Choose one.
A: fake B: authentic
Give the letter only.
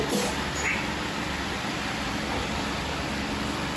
B